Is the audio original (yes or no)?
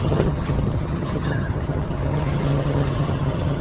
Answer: no